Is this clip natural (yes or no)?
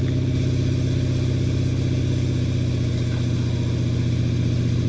yes